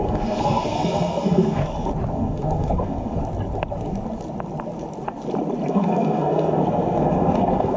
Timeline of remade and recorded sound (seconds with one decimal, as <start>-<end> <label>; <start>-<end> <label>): 0.0-1.6 remade; 1.6-2.1 recorded; 2.1-3.2 remade; 3.2-5.7 recorded; 5.7-7.8 remade